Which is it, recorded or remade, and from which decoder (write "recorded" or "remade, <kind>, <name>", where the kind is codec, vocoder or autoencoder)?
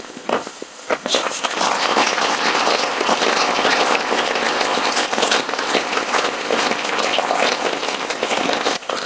remade, codec, ZipCodec